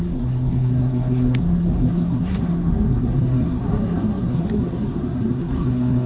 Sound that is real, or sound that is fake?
fake